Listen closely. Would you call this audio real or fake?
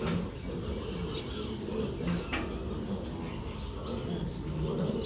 real